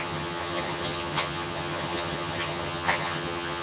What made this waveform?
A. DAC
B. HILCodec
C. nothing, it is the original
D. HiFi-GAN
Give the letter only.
D